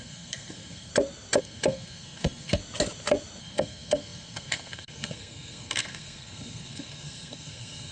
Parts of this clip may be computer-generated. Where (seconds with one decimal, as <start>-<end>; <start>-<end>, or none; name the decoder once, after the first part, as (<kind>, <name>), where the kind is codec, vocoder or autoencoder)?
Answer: 0.0-0.9 (codec, SNAC); 1.4-2.6; 3.4-7.9